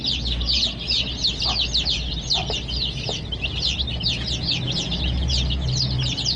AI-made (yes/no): yes